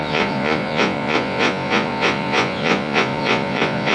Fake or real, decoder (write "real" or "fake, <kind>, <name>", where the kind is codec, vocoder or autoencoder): fake, vocoder, Vocos